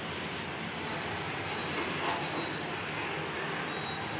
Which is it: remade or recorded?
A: recorded